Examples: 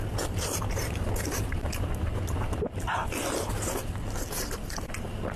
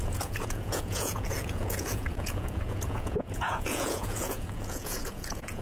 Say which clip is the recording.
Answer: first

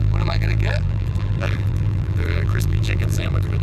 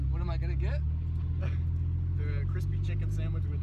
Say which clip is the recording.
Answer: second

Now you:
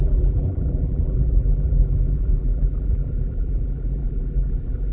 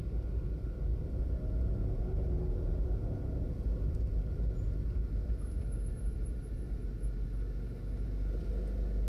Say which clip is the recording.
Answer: second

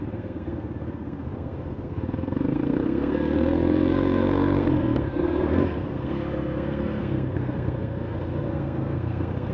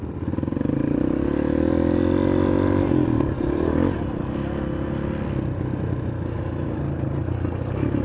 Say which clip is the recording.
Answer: second